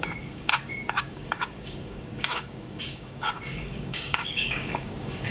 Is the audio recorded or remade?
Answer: remade